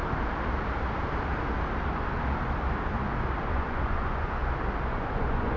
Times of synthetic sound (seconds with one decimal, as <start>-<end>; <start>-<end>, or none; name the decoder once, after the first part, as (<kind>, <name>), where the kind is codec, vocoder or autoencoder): 3.4-4.4 (vocoder, Vocos); 4.9-5.6